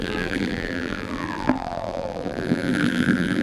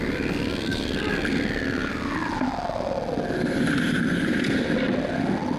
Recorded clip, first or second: second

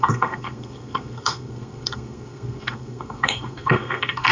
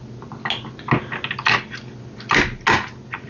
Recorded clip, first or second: second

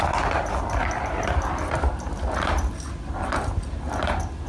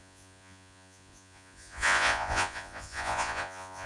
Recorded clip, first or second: first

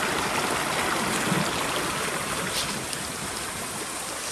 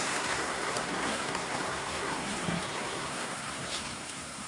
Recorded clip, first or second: first